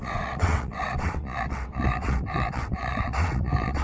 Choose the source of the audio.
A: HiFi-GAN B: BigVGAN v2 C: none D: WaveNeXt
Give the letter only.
D